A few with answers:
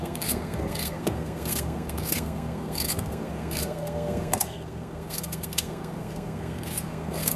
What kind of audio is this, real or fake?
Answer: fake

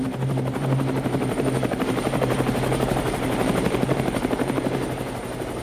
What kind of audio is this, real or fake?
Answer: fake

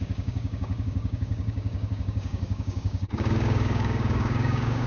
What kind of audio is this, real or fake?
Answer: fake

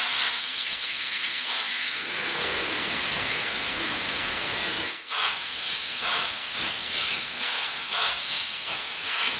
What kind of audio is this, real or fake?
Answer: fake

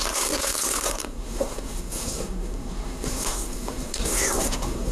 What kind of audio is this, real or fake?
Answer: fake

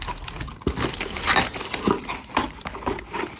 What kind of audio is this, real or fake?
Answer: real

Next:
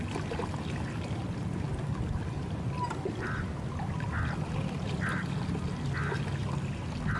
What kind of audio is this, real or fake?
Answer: real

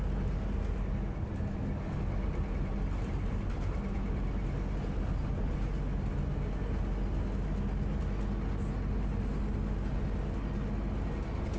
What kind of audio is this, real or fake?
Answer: real